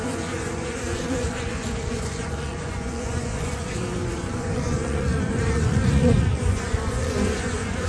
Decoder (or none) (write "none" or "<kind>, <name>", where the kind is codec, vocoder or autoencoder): vocoder, Vocos